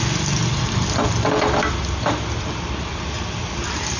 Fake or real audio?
real